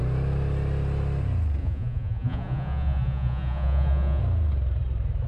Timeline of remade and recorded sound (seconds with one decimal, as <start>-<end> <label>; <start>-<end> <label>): 0.0-1.6 recorded; 1.6-4.2 remade; 4.2-5.3 recorded